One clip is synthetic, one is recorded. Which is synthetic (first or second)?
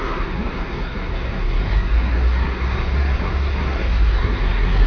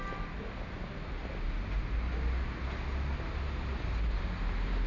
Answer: first